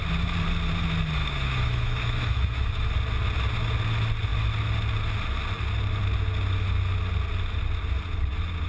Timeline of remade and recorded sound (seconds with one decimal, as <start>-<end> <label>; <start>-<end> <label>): 0.0-1.2 recorded; 1.2-2.9 remade; 2.9-8.7 recorded

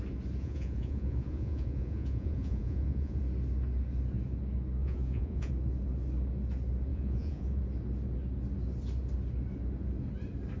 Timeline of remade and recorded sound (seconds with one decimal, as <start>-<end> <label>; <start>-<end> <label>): 0.0-0.4 recorded; 0.4-3.2 remade; 3.2-4.8 recorded; 4.8-5.5 remade; 5.5-6.9 recorded; 6.9-7.6 remade; 7.6-10.6 recorded

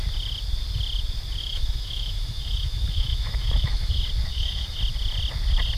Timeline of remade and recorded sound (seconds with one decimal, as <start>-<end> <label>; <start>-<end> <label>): 0.0-1.4 recorded; 1.4-3.9 remade; 3.9-4.3 recorded; 4.3-4.8 remade; 4.8-5.8 recorded

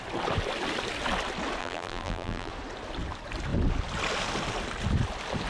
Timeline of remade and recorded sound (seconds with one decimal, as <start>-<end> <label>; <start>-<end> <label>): 0.0-1.6 recorded; 1.6-2.5 remade; 2.5-5.5 recorded

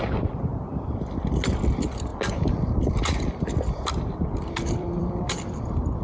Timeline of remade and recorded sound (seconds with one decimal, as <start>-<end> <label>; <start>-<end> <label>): 0.0-0.5 recorded; 0.5-1.4 remade; 1.4-2.1 recorded; 2.1-6.0 remade

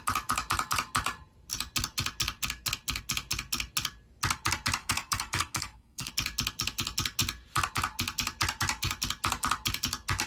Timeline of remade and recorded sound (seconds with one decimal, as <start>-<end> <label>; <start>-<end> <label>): 0.0-4.8 recorded; 4.8-6.1 remade; 6.1-10.3 recorded

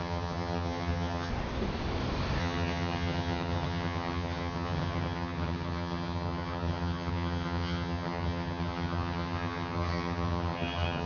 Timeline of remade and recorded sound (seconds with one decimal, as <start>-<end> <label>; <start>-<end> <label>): 0.0-1.3 remade; 1.3-2.4 recorded; 2.4-11.1 remade